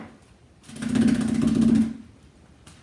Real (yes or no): yes